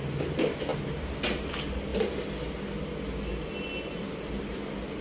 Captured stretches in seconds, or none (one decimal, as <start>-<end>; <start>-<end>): 0.0-5.0